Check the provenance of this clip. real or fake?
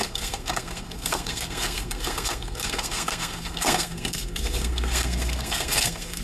fake